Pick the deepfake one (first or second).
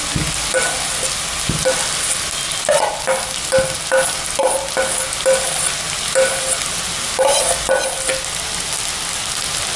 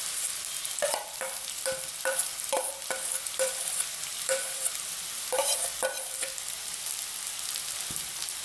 second